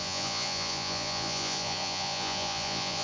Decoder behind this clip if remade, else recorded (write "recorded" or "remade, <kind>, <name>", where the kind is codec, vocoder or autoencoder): remade, vocoder, Vocos